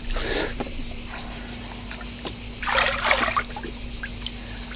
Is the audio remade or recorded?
recorded